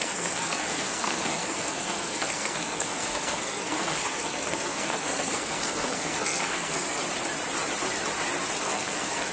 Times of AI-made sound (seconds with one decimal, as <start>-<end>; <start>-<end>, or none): 0.0-7.0; 8.6-9.3